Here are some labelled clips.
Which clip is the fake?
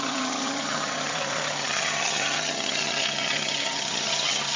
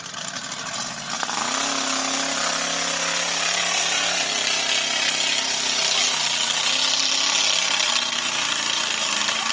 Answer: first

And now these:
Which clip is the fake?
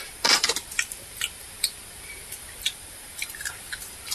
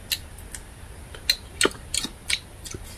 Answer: first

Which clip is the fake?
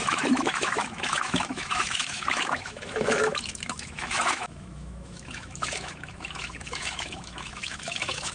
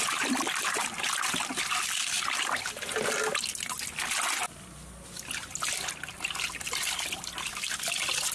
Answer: first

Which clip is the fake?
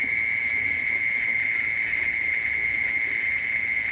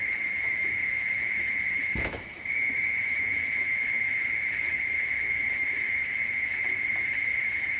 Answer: second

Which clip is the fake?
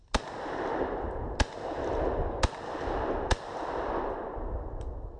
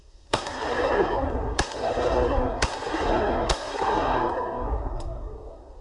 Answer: second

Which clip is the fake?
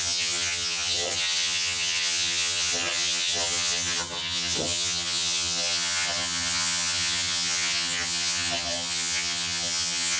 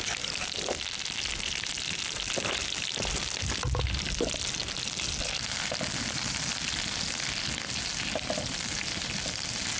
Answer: first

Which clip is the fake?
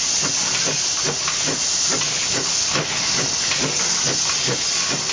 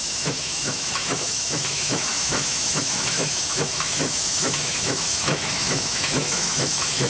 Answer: second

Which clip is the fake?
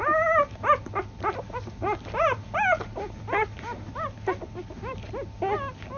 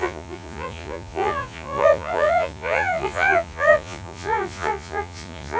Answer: second